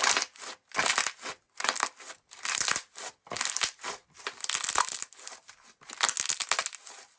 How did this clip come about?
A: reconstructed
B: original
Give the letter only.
B